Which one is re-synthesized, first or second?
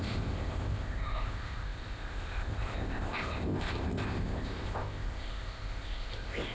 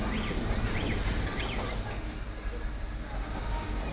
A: first